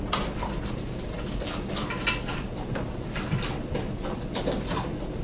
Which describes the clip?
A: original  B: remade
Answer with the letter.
A